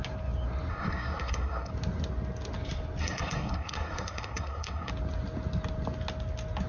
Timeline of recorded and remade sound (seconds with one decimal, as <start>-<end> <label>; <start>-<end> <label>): 0.0-0.7 recorded; 0.7-1.7 remade; 1.7-3.0 recorded; 3.0-4.9 remade; 4.9-6.7 recorded

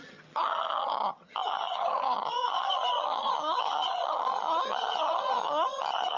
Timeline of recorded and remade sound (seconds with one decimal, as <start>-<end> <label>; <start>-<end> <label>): 0.0-6.2 remade